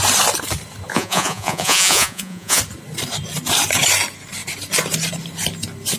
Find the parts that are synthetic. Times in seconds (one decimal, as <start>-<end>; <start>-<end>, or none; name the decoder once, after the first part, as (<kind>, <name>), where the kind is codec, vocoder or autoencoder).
0.9-2.6 (vocoder, Vocos)